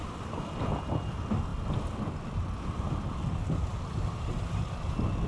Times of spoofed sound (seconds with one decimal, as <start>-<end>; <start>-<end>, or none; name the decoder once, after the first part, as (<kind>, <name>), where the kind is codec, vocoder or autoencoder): none